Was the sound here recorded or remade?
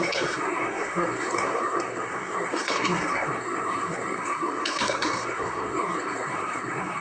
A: remade